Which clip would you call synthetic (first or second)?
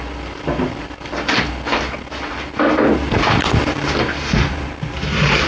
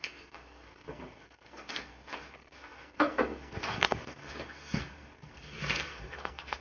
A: second